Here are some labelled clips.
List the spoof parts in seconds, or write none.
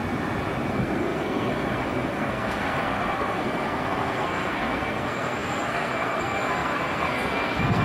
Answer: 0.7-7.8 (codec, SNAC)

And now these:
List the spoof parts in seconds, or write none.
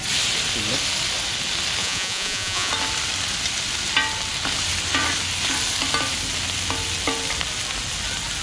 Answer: 1.8-2.7 (vocoder, Vocos)